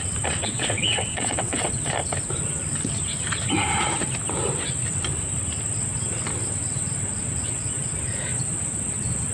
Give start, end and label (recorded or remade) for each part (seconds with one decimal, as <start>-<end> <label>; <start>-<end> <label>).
0.0-0.4 recorded; 0.4-1.9 remade; 1.9-9.3 recorded